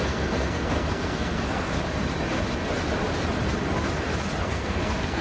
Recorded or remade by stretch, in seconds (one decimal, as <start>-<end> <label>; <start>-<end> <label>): 0.0-1.7 remade; 1.7-4.4 recorded; 4.4-5.2 remade